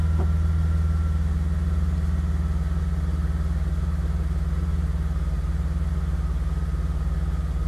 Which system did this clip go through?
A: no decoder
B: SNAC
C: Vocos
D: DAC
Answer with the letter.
A